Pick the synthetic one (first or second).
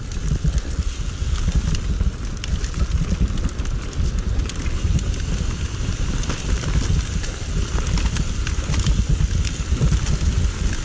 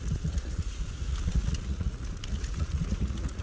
second